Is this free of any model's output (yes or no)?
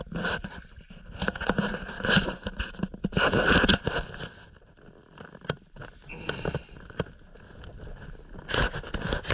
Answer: yes